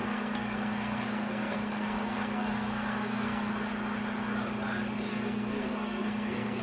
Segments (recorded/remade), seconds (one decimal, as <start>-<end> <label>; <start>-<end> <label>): 0.0-3.5 remade; 3.5-5.1 recorded; 5.1-6.6 remade